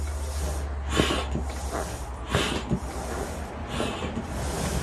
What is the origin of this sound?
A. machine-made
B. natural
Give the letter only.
B